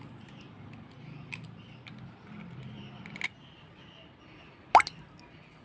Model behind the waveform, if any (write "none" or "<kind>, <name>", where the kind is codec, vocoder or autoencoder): none